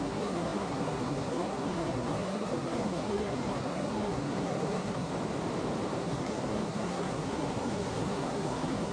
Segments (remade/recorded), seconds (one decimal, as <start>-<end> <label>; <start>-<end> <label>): 0.0-5.1 remade; 5.1-6.0 recorded; 6.0-8.9 remade